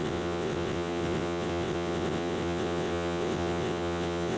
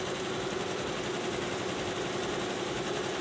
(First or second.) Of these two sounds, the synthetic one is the first